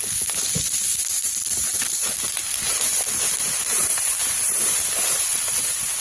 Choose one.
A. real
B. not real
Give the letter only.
A